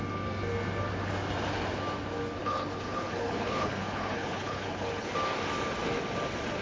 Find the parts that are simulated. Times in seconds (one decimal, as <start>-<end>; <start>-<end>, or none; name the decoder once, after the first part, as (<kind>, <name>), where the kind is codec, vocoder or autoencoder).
2.4-5.1 (codec, HILCodec)

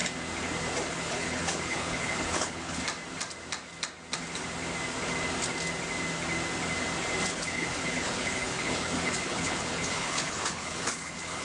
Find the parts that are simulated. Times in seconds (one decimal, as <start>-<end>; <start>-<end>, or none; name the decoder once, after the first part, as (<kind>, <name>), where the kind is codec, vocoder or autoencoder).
0.9-2.8 (codec, HILCodec); 7.3-11.4

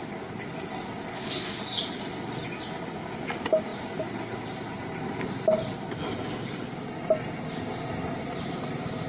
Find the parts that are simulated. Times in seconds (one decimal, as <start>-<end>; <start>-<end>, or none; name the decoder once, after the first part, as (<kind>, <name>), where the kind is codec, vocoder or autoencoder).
1.1-1.6 (codec, HILCodec)

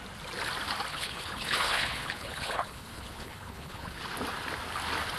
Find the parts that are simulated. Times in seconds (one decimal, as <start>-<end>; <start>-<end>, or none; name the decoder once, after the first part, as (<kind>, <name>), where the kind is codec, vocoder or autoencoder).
0.9-4.0 (codec, HILCodec)